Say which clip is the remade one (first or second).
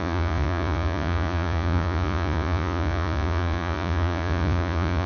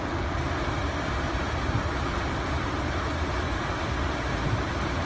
first